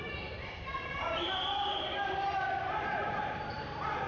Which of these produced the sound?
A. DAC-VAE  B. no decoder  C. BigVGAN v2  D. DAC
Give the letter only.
C